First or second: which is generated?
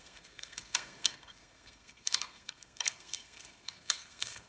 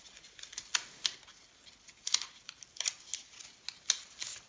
first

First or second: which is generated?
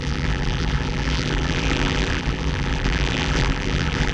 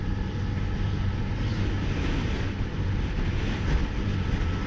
first